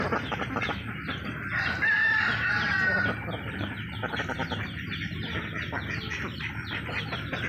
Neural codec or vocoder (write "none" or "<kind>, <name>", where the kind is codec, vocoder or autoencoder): none